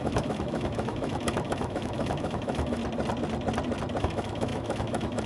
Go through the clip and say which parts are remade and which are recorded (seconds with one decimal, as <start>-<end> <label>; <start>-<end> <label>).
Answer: 0.0-2.8 remade; 2.8-4.0 recorded; 4.0-5.3 remade